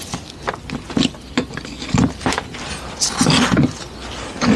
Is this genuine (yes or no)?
yes